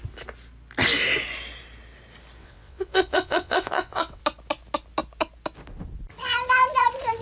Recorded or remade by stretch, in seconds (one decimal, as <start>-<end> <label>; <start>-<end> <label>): 0.0-2.4 recorded; 2.4-4.2 remade; 4.2-7.2 recorded